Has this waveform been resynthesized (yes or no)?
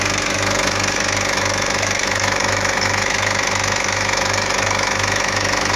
yes